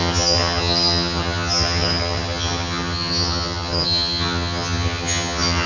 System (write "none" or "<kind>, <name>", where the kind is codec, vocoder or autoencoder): vocoder, HiFi-GAN